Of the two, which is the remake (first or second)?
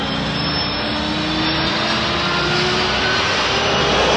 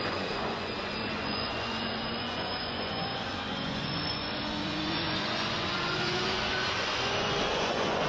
second